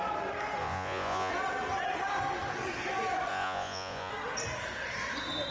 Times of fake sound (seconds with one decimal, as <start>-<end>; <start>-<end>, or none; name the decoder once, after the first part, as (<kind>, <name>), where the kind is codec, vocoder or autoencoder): 0.6-1.3 (vocoder, Vocos); 3.3-4.1